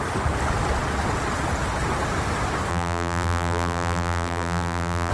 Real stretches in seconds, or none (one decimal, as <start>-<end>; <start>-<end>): 0.0-2.7